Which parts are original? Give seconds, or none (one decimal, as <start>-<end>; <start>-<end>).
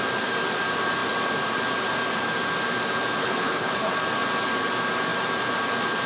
0.0-3.2; 3.9-6.1